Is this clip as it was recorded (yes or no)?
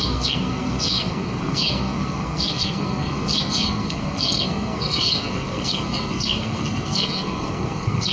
no